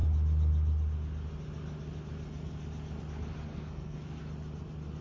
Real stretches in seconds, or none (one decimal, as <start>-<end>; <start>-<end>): 0.0-3.5; 4.2-5.0